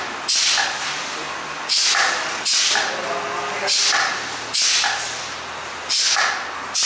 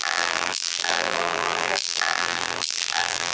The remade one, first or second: second